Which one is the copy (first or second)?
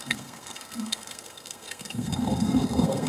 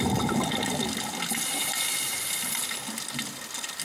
first